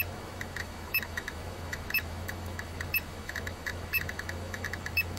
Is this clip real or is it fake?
fake